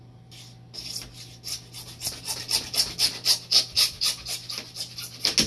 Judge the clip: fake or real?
real